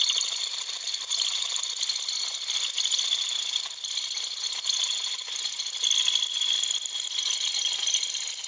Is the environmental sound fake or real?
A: real